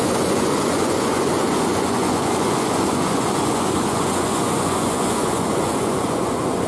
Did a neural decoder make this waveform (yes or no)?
yes